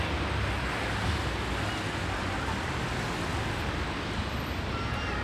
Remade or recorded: recorded